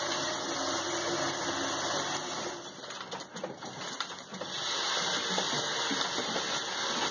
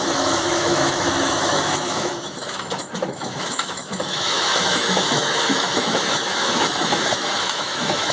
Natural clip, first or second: first